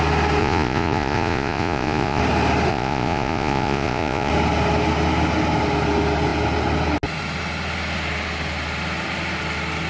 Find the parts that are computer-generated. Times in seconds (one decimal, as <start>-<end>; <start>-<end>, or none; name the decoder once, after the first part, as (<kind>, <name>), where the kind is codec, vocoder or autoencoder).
0.4-2.2 (vocoder, Vocos); 2.7-4.3